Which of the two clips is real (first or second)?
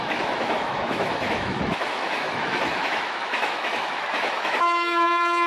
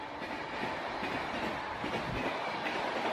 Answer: second